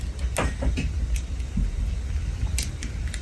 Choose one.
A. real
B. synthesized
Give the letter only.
A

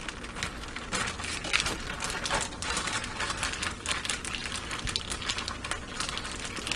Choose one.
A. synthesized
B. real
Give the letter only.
B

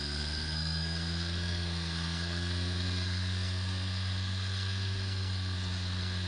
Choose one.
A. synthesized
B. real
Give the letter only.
A